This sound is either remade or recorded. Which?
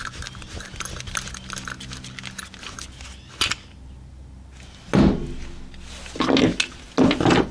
recorded